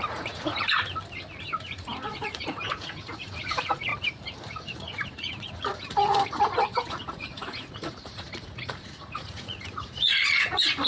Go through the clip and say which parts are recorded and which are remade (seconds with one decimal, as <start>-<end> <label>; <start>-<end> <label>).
0.0-0.8 remade; 0.8-1.6 recorded; 1.6-3.9 remade; 3.9-4.5 recorded; 4.5-10.9 remade